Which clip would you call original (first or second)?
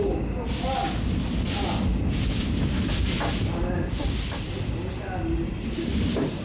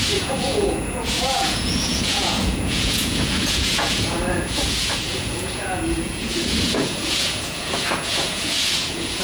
first